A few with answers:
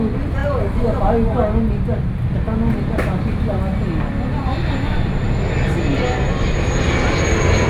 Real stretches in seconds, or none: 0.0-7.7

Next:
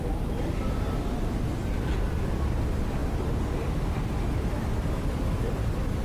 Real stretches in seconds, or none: 0.0-6.0

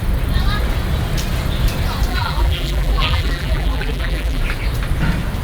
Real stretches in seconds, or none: 0.0-2.1; 4.4-5.4

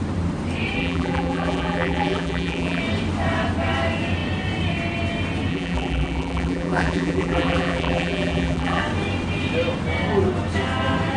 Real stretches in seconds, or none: 0.0-0.8; 2.8-5.5; 8.8-11.2

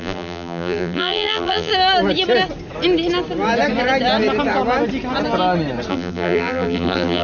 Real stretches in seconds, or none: 1.7-5.9

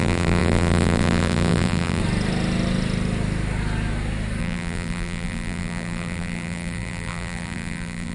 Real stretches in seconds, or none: 2.0-4.4